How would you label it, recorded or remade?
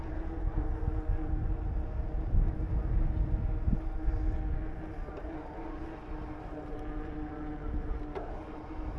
recorded